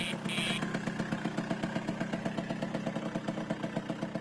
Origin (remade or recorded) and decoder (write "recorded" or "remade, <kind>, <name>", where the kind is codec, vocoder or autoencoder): recorded